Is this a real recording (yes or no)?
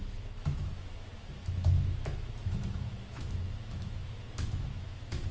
no